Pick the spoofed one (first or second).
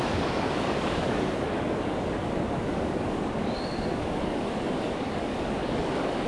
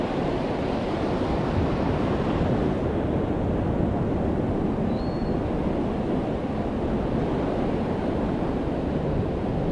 first